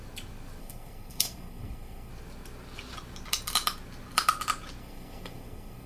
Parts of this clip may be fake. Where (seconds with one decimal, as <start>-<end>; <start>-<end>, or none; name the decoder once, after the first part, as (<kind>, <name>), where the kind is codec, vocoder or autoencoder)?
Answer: 0.6-2.1 (codec, SNAC); 4.8-5.9